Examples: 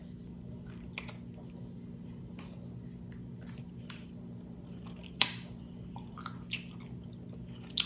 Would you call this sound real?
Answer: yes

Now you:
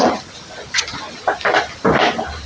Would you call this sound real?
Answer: yes